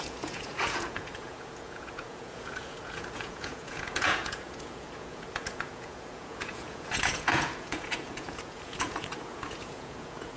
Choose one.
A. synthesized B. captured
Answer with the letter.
A